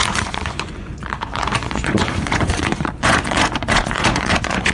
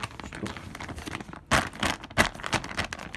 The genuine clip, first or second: second